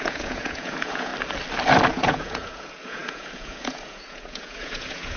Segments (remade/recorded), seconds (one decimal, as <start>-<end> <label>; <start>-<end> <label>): 0.0-1.1 remade; 1.1-1.9 recorded; 1.9-5.2 remade